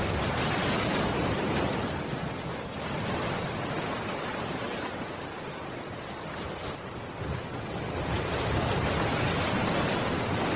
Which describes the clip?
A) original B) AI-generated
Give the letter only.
A